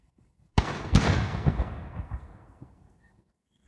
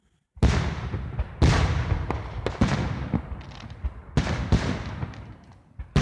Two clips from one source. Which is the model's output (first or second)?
first